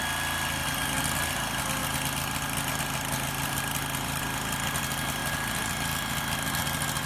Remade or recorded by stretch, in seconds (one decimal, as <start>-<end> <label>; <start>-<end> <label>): 0.0-7.1 recorded